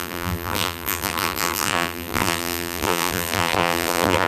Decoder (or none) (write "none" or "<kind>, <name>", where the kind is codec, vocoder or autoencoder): vocoder, BigVGAN v2